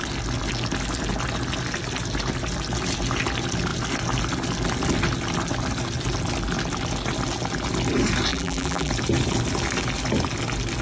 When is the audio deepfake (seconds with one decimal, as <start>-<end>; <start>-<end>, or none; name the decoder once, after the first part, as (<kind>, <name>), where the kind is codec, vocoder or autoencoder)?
8.3-8.9 (vocoder, BigVGAN v2)